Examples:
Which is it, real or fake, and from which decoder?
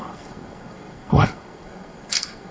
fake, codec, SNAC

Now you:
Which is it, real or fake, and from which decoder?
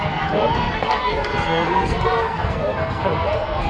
fake, codec, SNAC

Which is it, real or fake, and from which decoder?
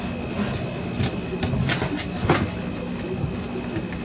real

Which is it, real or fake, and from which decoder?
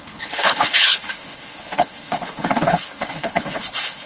fake, codec, HILCodec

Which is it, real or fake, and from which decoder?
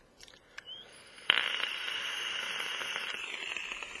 fake, vocoder, BigVGAN v2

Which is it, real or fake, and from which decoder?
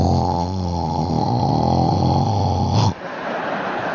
real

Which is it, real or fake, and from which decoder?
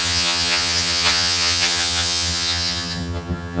fake, vocoder, HiFi-GAN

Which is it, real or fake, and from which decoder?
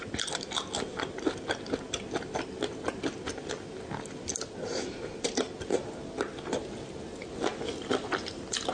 real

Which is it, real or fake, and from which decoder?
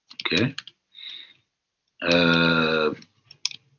real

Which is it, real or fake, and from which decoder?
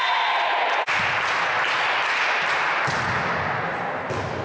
real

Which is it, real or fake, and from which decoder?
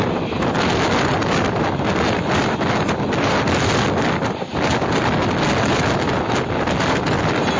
real